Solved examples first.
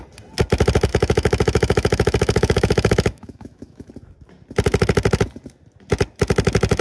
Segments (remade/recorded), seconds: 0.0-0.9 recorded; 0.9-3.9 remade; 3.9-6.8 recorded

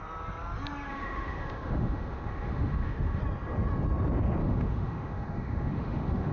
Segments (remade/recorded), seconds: 0.0-0.9 recorded; 0.9-3.2 remade; 3.2-4.4 recorded; 4.4-6.3 remade

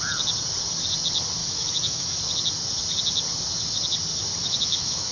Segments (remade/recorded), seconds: 0.0-1.4 recorded; 1.4-2.2 remade; 2.2-4.4 recorded; 4.4-5.1 remade

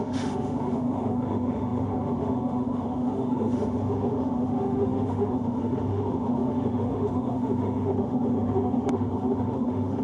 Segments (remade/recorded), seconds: 0.0-10.0 remade

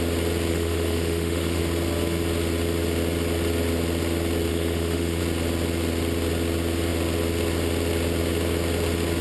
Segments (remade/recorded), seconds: 0.0-0.5 recorded; 0.5-1.6 remade; 1.6-4.5 recorded; 4.5-5.2 remade; 5.2-9.2 recorded

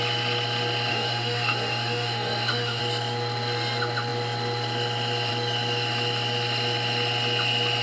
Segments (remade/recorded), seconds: 0.0-0.9 recorded; 0.9-2.8 remade; 2.8-7.8 recorded

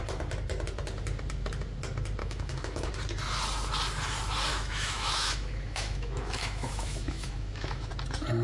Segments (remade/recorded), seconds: 0.0-2.2 recorded; 2.2-2.9 remade; 2.9-4.5 recorded; 4.5-7.9 remade; 7.9-8.4 recorded

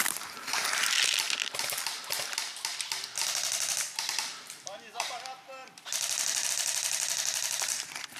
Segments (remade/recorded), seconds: 0.0-8.2 recorded